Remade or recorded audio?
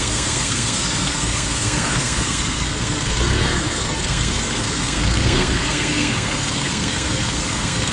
remade